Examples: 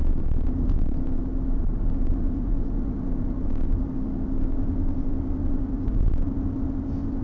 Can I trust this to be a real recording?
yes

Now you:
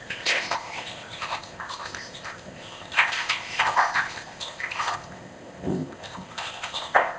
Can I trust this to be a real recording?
no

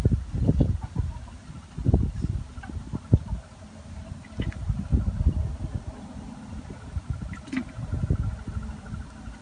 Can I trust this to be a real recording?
yes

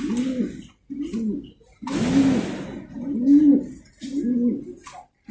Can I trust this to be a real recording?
yes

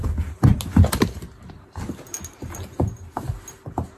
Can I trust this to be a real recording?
yes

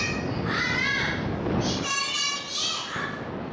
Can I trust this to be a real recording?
yes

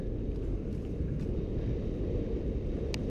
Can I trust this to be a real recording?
yes